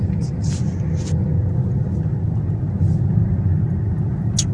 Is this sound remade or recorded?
recorded